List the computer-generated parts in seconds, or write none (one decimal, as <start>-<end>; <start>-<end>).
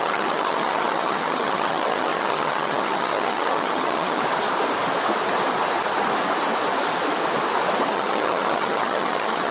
0.0-4.2; 7.9-9.5